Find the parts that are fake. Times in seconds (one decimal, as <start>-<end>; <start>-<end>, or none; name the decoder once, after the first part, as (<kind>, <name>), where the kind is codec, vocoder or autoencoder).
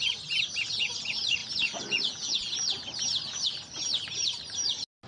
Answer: 1.4-2.5 (vocoder, Vocos)